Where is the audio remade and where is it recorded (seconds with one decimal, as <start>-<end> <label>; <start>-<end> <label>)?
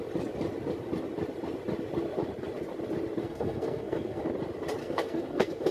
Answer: 0.0-3.2 recorded; 3.2-4.2 remade; 4.2-4.8 recorded; 4.8-5.7 remade